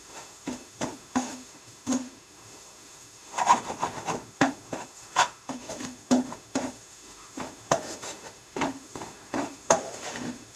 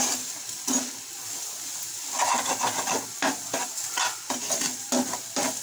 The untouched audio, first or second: second